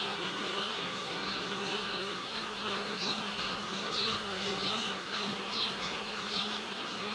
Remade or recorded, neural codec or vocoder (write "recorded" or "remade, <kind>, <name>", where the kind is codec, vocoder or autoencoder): remade, codec, SNAC